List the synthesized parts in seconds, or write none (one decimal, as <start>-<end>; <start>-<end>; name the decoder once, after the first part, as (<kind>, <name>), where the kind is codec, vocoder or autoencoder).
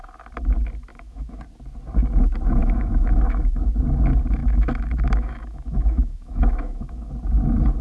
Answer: 0.9-1.4 (autoencoder, DAC-VAE); 2.6-3.6; 4.4-7.1